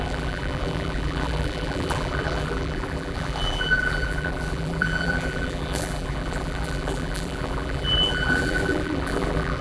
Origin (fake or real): fake